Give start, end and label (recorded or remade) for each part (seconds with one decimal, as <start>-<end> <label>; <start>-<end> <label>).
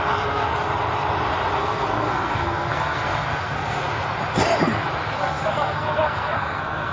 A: 0.0-0.5 remade; 0.5-1.6 recorded; 1.6-3.8 remade; 3.8-5.2 recorded; 5.2-6.9 remade